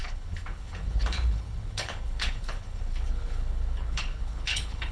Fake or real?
fake